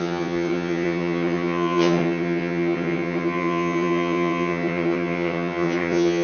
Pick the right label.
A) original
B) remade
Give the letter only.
B